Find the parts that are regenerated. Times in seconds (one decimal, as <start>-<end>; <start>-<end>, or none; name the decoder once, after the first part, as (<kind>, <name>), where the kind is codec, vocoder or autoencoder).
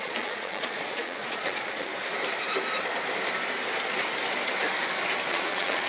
0.0-1.9 (vocoder, Vocos); 5.3-5.9